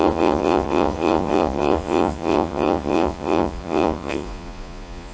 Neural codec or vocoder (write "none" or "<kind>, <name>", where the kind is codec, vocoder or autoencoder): vocoder, Vocos